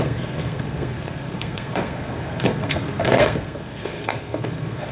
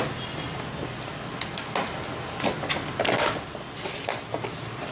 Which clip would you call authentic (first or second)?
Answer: second